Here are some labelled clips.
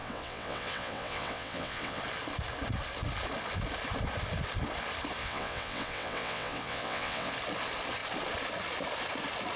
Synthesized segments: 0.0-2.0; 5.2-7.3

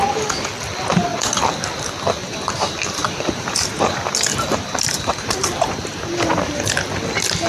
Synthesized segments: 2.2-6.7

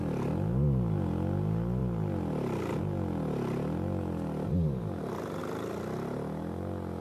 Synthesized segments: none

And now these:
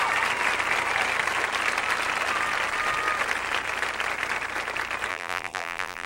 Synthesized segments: 5.1-6.1

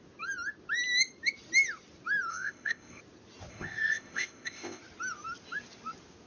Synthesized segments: 2.3-3.0; 3.5-4.8

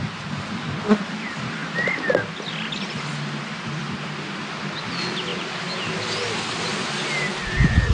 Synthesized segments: none

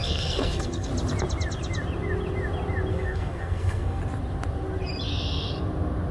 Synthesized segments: 0.0-0.9; 2.9-4.0